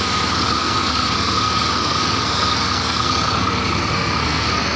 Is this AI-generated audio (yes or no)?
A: yes